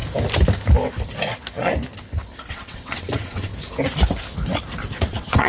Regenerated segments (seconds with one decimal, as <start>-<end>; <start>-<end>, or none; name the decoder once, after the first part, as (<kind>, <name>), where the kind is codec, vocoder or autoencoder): 2.5-3.5 (vocoder, WaveNeXt); 5.1-5.5